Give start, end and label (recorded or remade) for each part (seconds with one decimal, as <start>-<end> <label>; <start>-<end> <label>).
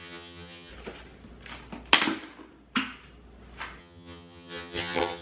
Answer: 0.0-0.7 remade; 0.7-3.8 recorded; 3.8-5.2 remade